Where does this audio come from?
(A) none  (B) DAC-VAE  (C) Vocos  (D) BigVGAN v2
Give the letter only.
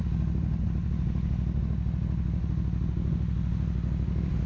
A